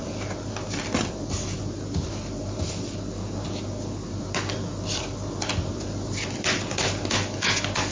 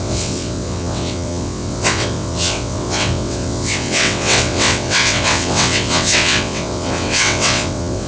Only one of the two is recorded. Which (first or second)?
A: first